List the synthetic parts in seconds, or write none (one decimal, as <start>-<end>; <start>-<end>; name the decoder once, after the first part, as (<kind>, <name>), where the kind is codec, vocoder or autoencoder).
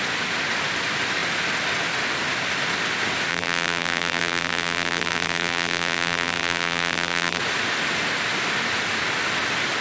3.3-7.4 (vocoder, BigVGAN v2)